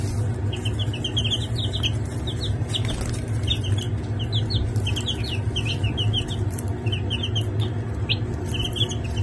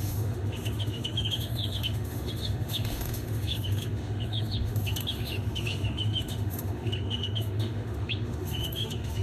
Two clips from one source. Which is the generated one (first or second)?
second